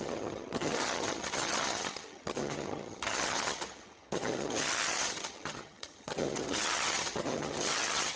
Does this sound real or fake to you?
fake